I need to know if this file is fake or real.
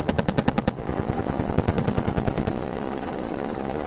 fake